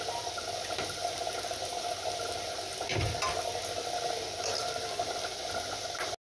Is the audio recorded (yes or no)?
yes